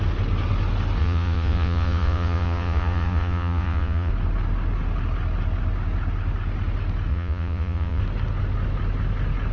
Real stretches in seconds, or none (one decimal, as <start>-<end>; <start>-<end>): 0.0-1.0; 4.1-7.1; 8.0-9.5